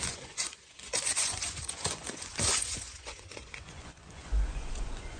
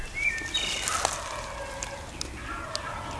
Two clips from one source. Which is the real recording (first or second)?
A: second